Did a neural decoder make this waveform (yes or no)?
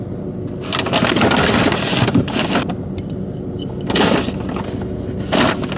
no